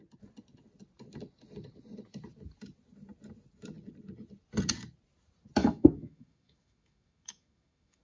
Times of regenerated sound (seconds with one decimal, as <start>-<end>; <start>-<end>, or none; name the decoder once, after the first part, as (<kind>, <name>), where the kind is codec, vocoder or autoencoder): 5.6-8.0 (autoencoder, DAC-VAE)